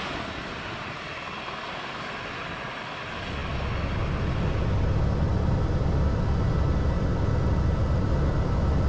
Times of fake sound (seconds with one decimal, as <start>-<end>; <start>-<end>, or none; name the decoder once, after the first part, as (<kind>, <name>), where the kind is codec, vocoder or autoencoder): none